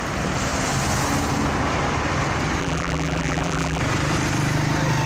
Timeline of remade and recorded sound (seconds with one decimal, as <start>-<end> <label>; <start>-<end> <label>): 0.0-2.6 recorded; 2.6-3.8 remade; 3.8-5.1 recorded